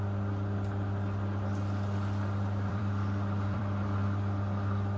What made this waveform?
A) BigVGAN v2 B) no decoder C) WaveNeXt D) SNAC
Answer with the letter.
A